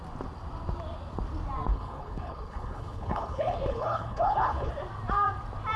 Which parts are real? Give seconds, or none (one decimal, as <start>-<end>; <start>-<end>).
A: 0.0-1.7; 4.7-5.8